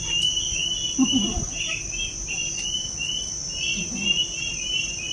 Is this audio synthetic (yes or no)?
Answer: no